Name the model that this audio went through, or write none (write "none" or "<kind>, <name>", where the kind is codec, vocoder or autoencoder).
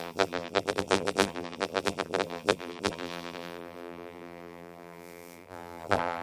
vocoder, BigVGAN v2